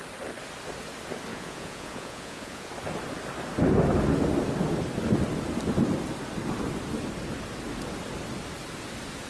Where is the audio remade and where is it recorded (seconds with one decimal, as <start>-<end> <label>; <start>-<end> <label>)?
0.0-1.3 recorded; 1.3-2.7 remade; 2.7-9.3 recorded